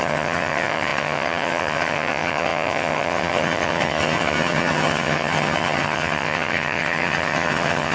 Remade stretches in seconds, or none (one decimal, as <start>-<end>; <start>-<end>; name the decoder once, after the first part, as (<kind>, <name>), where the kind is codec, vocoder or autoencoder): 0.0-7.9 (vocoder, HiFi-GAN)